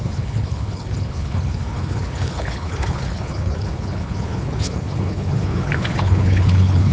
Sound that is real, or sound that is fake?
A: fake